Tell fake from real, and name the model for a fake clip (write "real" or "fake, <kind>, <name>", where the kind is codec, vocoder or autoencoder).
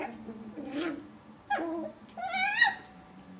real